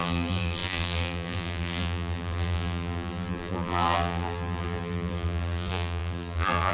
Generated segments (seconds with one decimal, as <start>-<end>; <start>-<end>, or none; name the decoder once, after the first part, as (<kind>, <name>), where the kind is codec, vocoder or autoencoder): 0.0-6.7 (vocoder, BigVGAN v2)

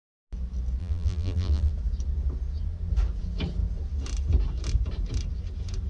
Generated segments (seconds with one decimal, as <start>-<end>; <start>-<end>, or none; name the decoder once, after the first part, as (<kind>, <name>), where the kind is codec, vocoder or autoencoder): 0.8-1.7 (vocoder, BigVGAN v2)

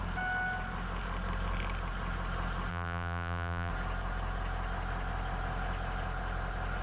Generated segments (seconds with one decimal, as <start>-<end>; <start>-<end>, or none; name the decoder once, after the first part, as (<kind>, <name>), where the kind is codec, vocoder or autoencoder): 2.7-3.7 (vocoder, BigVGAN v2)

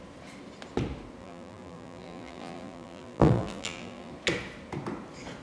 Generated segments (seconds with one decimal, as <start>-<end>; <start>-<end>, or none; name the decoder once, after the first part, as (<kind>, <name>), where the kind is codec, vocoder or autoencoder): 1.2-4.1 (vocoder, BigVGAN v2)

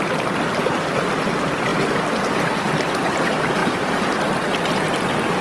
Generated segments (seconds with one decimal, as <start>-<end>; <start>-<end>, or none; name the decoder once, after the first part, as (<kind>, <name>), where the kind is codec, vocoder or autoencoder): 1.7-2.8 (vocoder, BigVGAN v2)

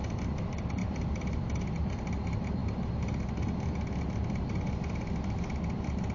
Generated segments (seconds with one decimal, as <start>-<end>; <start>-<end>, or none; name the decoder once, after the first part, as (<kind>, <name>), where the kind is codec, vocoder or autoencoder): 0.8-1.9 (vocoder, BigVGAN v2)

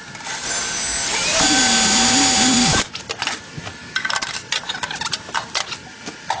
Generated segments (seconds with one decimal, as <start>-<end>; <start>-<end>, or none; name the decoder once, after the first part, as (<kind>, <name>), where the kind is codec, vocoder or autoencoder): 2.6-3.2 (vocoder, BigVGAN v2)